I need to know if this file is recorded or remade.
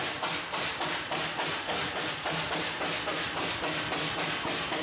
recorded